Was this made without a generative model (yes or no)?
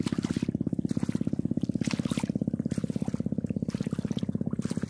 yes